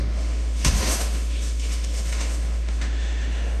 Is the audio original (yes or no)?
no